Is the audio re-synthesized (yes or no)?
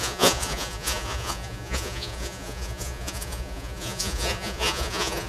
yes